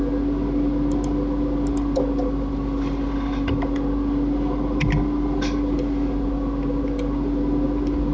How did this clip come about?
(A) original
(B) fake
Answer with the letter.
A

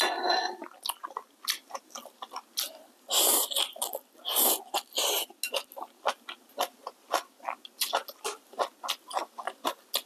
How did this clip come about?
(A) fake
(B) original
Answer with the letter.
B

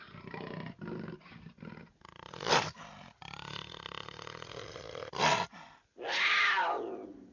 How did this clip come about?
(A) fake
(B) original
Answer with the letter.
B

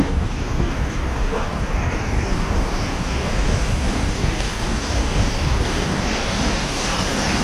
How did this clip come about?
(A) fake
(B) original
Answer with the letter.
A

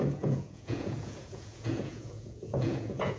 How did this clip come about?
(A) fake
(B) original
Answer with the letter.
A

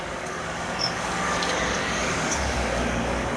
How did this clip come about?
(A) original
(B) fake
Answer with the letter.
B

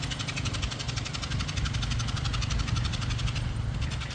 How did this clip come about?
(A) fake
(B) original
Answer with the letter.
B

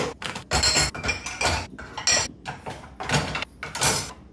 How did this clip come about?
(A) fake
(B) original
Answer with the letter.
B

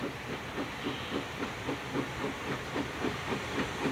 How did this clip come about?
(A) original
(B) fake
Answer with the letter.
A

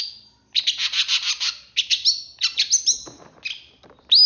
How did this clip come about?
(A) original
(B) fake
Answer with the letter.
A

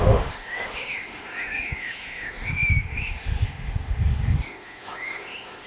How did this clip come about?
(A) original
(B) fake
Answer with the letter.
B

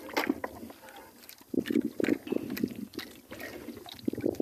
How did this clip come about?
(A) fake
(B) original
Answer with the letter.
B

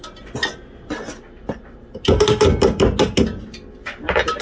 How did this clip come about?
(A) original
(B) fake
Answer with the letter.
A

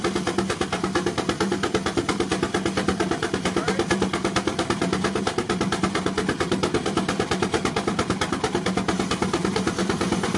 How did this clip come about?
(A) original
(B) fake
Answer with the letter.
B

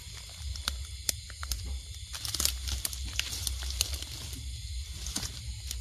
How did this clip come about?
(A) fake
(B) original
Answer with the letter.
B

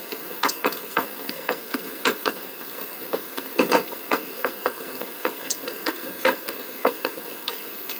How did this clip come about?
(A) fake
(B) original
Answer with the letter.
A